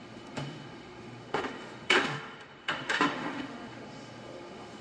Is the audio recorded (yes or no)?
no